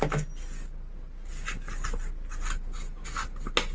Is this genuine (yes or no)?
yes